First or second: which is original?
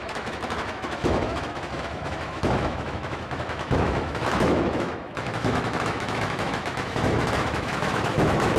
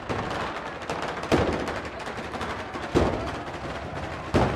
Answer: second